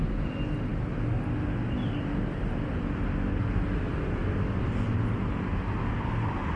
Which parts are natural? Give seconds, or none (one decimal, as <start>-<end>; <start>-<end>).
0.0-6.6

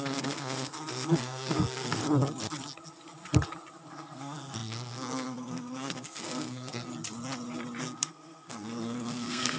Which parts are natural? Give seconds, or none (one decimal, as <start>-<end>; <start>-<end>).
2.0-3.9; 6.9-7.8